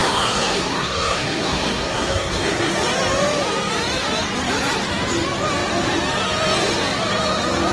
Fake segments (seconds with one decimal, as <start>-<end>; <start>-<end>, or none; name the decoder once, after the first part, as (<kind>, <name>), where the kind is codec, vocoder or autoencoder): 0.0-2.7 (codec, SNAC)